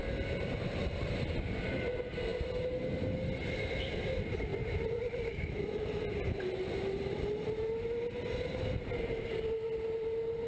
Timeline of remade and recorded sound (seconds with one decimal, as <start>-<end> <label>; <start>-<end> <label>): 0.0-4.5 recorded; 4.5-6.4 remade; 6.4-10.5 recorded